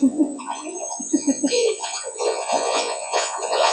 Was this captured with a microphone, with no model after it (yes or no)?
no